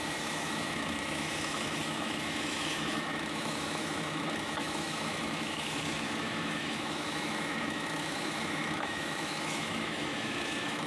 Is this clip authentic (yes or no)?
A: no